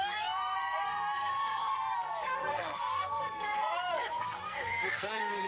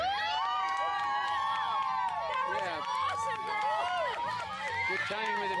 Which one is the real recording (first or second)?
second